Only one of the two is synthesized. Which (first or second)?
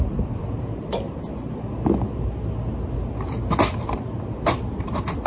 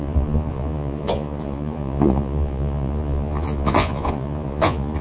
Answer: second